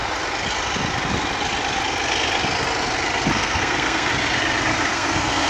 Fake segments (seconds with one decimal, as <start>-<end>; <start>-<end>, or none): 3.3-4.1; 4.9-5.5